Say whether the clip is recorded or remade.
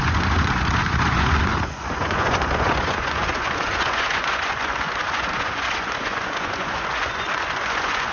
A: remade